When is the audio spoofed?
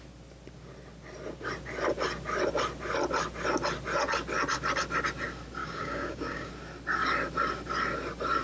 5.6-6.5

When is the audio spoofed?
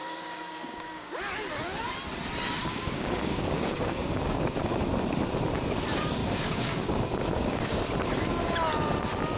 0.0-1.1; 2.6-4.8; 6.2-7.7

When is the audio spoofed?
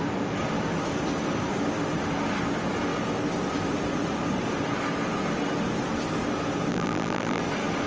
6.7-7.4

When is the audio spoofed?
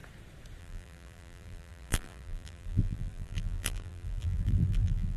0.6-5.2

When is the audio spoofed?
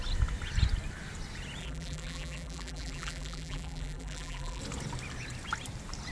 1.6-4.6